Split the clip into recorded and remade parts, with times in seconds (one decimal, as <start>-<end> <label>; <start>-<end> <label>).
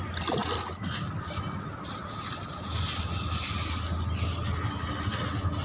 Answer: 0.0-5.6 recorded